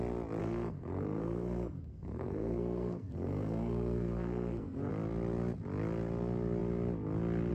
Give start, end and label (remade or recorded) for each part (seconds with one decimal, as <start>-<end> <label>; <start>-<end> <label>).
0.0-0.4 recorded; 0.4-4.9 remade; 4.9-7.5 recorded